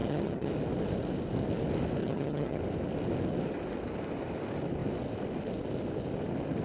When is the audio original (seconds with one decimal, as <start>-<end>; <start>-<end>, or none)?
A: 0.5-2.0; 2.6-6.6